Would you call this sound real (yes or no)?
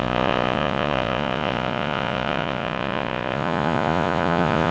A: no